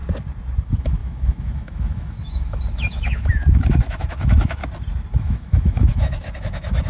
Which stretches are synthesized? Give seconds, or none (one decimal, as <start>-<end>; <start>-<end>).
0.6-4.6; 5.2-6.9